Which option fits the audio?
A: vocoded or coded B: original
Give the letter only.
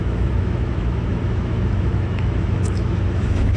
A